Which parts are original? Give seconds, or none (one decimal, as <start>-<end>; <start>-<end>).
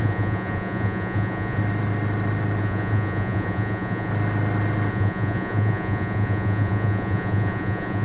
1.6-2.6; 4.1-4.9